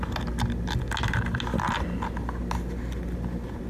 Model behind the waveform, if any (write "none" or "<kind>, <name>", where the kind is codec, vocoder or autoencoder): none